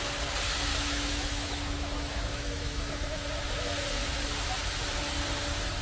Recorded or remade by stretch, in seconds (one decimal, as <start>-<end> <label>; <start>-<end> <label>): 0.0-0.7 recorded; 0.7-3.3 remade; 3.3-5.8 recorded